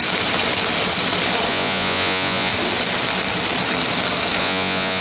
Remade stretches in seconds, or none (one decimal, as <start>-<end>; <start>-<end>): 1.5-2.5; 4.4-5.0